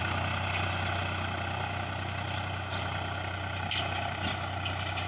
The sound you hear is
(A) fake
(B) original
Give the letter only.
B